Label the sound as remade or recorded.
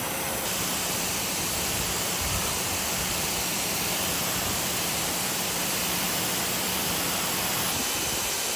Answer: remade